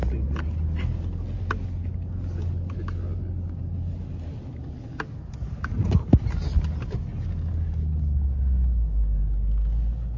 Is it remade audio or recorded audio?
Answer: recorded